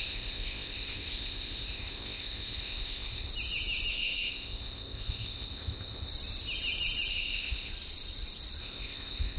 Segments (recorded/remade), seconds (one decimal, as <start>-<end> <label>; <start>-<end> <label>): 0.0-3.3 remade; 3.3-3.9 recorded; 3.9-6.1 remade; 6.1-7.1 recorded; 7.1-7.7 remade; 7.7-8.6 recorded; 8.6-9.4 remade